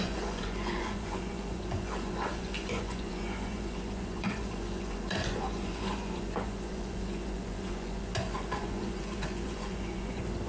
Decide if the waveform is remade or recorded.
remade